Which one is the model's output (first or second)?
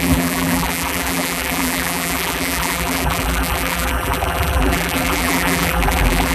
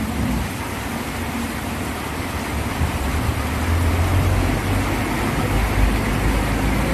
first